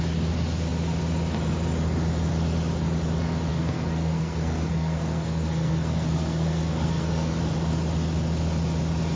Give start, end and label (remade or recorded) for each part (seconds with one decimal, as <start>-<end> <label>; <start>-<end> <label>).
0.0-3.5 recorded; 3.5-7.4 remade; 7.4-9.2 recorded